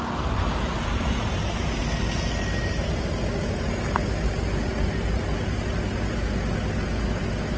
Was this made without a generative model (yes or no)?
yes